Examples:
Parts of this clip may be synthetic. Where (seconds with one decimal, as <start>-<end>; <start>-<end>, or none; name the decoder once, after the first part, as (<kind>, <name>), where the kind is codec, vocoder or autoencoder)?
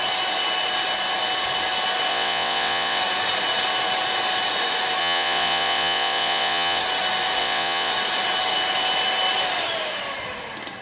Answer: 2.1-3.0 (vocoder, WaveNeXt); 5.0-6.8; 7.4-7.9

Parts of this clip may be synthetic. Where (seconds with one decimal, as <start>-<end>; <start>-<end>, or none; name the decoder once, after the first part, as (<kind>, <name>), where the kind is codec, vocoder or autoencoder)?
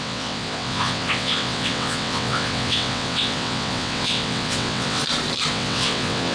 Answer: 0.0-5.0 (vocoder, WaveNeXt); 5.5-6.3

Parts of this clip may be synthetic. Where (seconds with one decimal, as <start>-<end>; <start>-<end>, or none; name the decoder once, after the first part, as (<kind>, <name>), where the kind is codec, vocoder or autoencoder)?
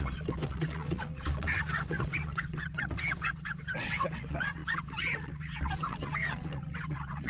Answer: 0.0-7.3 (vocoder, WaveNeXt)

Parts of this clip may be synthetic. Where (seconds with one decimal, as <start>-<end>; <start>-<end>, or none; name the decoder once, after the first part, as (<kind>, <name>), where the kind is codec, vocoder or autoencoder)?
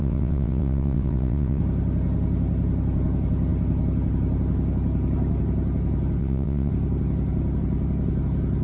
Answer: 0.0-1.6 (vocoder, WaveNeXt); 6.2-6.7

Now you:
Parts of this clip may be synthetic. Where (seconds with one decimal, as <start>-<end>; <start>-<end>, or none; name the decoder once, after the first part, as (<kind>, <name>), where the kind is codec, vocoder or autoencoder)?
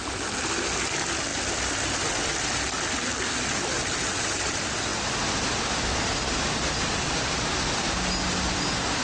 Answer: none